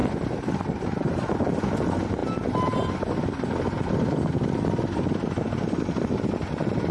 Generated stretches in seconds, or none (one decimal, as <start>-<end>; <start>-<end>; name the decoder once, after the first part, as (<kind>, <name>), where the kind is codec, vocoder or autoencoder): none